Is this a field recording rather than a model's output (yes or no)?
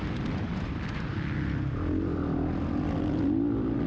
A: no